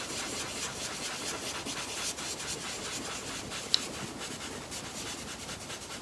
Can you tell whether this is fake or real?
real